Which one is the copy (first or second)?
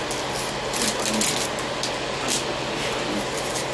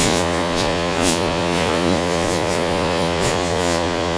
second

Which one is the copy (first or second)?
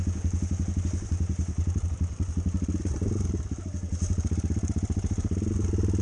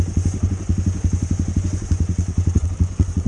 second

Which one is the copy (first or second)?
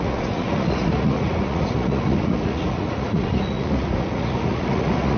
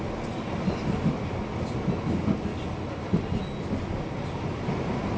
first